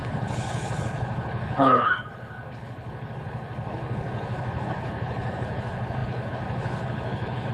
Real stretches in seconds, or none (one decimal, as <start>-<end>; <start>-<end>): none

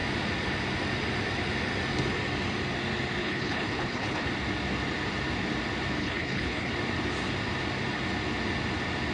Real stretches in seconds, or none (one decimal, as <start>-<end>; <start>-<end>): 0.0-3.2; 4.3-6.0; 6.7-9.1

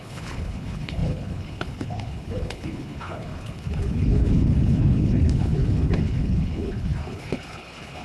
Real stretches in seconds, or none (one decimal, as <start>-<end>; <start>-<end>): none

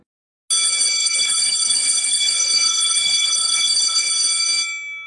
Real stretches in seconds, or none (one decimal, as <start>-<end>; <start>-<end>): 0.0-1.0; 4.1-5.1

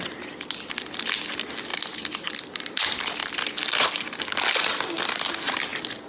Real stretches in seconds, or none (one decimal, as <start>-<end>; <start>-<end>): 0.0-6.1

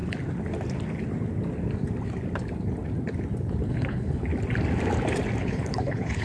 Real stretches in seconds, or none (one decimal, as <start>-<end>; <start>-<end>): 0.0-3.7; 4.3-5.4

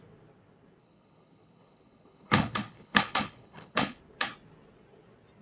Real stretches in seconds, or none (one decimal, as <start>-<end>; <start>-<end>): 0.0-0.8; 4.0-5.4

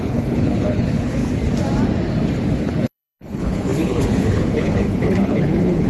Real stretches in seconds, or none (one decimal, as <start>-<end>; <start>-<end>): 1.2-2.6